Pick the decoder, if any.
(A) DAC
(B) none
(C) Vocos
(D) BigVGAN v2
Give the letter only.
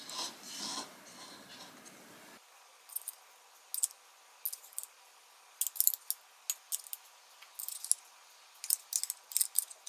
B